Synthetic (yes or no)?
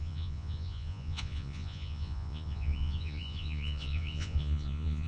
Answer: yes